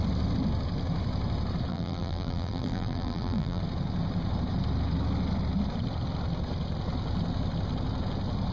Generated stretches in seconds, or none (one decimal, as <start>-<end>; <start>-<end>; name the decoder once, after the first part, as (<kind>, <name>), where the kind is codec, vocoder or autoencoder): 1.7-3.6 (vocoder, BigVGAN v2)